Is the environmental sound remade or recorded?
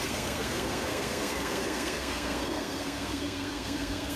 remade